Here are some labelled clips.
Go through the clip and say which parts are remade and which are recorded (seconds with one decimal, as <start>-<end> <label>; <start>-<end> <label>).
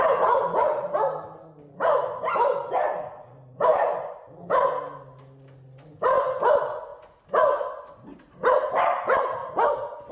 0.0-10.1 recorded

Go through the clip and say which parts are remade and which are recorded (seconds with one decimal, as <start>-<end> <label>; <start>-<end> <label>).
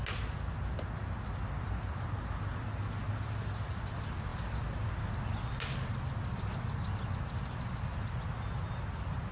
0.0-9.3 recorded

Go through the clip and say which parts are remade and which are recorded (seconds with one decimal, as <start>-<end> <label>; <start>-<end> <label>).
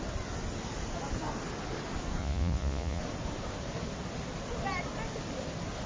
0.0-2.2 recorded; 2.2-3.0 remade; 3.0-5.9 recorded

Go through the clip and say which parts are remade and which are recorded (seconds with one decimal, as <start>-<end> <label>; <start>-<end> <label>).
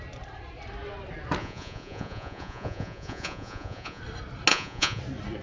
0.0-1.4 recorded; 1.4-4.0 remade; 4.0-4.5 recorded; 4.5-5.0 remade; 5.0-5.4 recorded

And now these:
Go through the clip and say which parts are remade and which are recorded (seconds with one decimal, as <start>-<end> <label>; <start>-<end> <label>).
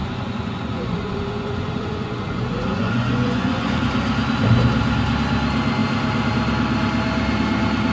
0.0-3.8 remade; 3.8-7.9 recorded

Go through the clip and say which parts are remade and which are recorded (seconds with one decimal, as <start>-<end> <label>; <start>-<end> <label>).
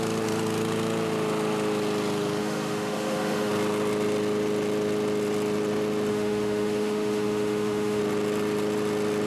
0.0-2.4 recorded; 2.4-3.5 remade; 3.5-6.1 recorded; 6.1-8.0 remade; 8.0-9.3 recorded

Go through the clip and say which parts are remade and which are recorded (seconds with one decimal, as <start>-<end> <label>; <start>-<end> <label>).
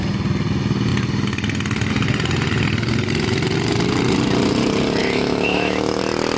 0.0-5.0 recorded; 5.0-6.0 remade; 6.0-6.4 recorded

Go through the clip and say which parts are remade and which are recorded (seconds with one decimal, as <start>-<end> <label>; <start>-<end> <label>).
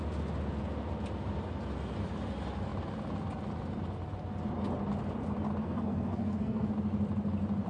0.0-5.6 recorded; 5.6-6.7 remade; 6.7-7.7 recorded